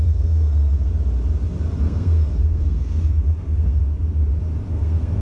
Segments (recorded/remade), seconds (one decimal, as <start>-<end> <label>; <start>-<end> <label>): 0.0-0.9 remade; 0.9-1.8 recorded; 1.8-3.8 remade; 3.8-4.7 recorded; 4.7-5.2 remade